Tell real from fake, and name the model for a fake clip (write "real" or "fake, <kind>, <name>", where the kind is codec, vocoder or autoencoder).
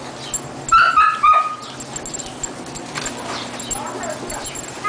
real